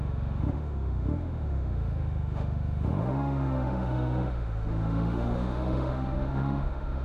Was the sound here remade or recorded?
remade